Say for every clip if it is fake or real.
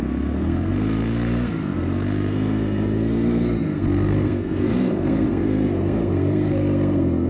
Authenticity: fake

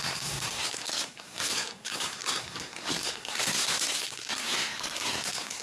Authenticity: fake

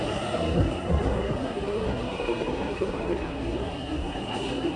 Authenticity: fake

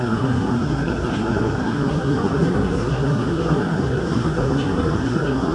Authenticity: fake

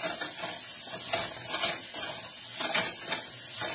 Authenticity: real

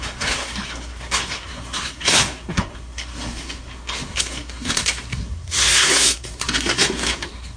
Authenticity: fake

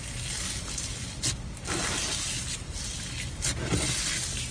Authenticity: real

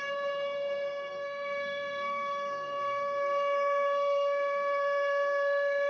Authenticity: fake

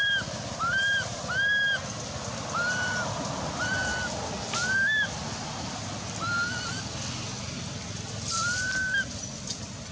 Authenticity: real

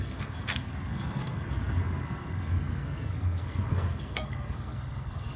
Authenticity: fake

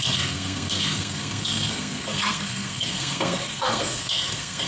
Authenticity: fake